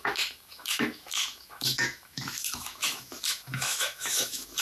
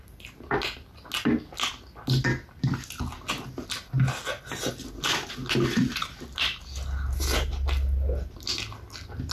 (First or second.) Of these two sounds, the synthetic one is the first